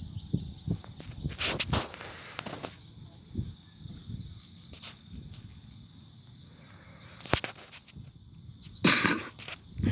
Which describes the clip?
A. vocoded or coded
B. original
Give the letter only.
B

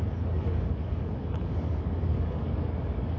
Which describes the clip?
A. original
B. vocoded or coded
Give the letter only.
B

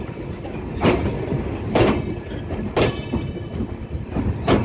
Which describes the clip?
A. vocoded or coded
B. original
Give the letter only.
B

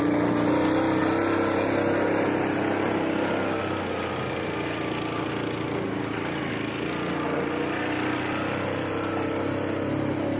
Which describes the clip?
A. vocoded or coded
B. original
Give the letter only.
B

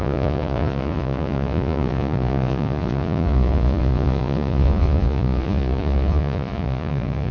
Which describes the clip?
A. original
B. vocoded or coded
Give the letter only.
B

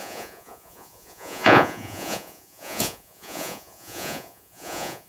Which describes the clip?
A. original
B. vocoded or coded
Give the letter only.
B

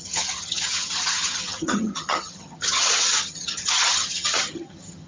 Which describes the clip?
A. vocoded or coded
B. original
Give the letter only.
A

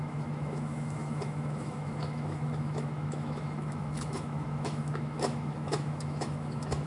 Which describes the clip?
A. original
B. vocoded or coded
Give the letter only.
B